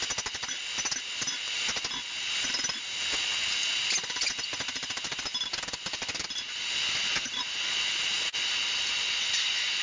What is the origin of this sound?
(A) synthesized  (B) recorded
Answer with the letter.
B